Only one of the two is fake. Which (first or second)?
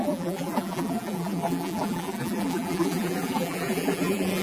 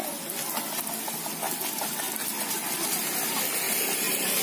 first